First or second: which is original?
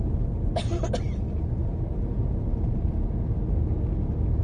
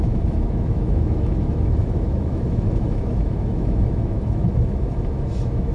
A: first